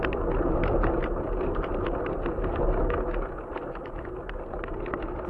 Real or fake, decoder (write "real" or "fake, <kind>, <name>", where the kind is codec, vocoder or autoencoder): real